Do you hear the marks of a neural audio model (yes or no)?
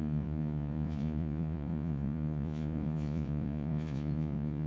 yes